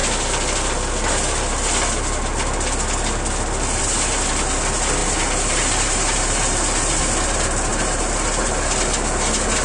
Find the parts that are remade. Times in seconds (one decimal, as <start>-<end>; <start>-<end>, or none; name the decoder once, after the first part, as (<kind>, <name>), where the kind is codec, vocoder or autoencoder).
5.0-7.0 (vocoder, BigVGAN v2); 7.7-8.4